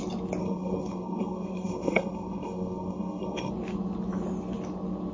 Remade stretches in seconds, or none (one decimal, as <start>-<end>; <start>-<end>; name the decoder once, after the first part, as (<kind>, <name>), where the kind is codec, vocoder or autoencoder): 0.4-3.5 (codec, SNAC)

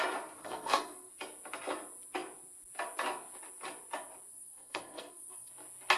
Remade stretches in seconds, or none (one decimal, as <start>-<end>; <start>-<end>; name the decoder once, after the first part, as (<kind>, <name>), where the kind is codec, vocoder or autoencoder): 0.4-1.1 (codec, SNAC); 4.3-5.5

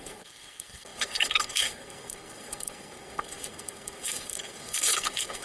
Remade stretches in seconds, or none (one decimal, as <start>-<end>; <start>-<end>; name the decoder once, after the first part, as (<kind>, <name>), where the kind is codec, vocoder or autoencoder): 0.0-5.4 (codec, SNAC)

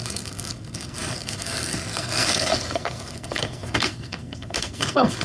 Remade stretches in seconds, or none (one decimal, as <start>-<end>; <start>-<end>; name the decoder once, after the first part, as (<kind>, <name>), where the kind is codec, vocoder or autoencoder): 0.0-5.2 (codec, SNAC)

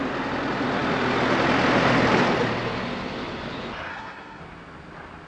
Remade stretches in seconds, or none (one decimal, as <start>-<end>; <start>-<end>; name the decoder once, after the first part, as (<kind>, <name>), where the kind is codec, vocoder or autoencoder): 3.9-4.4 (codec, SNAC)

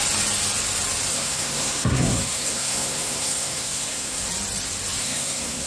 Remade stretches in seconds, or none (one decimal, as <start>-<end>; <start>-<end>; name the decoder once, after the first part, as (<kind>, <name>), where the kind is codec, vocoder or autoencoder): 1.1-4.2 (codec, SNAC); 5.0-5.7